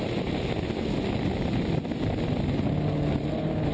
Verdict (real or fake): real